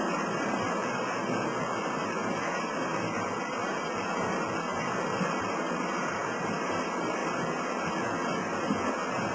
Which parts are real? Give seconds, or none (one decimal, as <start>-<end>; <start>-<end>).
1.2-1.8; 2.9-5.2; 7.2-9.3